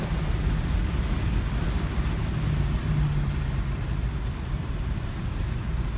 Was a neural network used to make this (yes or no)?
no